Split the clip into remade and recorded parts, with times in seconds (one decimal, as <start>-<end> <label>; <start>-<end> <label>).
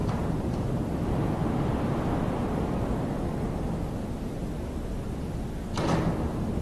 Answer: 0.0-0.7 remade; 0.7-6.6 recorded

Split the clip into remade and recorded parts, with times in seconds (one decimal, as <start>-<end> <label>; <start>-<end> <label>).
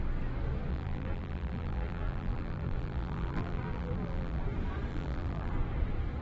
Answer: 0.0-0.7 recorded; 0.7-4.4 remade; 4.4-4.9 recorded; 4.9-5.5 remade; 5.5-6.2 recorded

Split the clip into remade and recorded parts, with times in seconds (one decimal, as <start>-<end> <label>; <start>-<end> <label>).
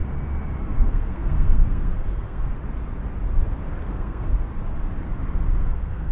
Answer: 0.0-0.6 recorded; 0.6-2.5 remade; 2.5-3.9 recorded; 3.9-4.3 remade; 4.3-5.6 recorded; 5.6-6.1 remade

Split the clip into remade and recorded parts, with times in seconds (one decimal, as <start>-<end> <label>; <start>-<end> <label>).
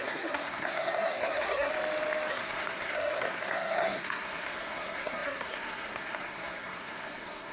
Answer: 0.0-1.7 remade; 1.7-2.3 recorded; 2.3-7.5 remade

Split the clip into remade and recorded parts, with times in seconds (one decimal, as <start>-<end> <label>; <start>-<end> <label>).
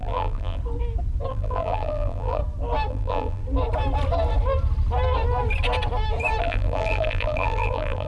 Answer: 0.0-0.6 remade; 0.6-1.3 recorded; 1.3-2.4 remade; 2.4-2.9 recorded; 2.9-3.4 remade; 3.4-6.4 recorded; 6.4-8.1 remade